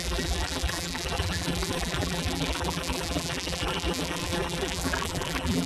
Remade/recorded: remade